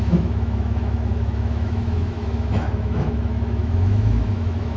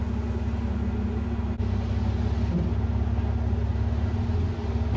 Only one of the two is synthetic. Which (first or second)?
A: first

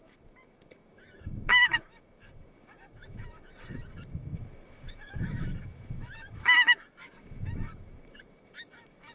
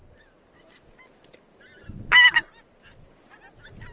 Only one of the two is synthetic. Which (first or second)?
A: first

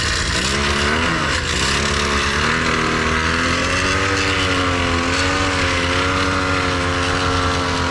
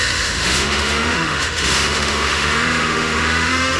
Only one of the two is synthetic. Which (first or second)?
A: second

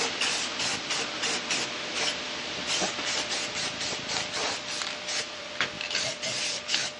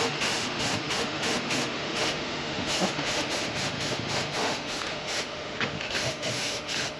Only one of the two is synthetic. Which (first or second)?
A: second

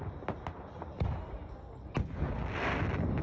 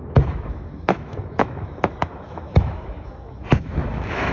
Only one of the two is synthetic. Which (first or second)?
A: second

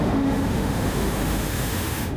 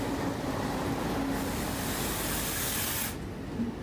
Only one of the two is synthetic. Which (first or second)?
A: first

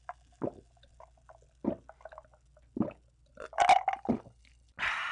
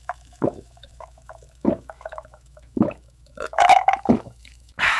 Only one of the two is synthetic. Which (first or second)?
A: second